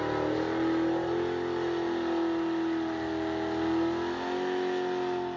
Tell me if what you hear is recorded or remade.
recorded